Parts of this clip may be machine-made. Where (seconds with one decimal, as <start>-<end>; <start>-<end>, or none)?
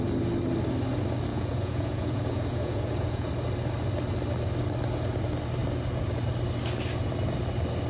1.3-3.3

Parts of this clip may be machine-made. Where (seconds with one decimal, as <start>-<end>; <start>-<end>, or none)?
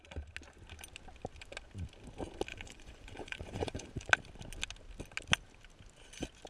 2.5-4.1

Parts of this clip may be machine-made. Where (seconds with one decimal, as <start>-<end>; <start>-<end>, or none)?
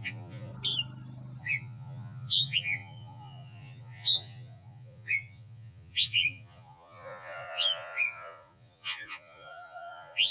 0.0-0.5; 1.4-10.3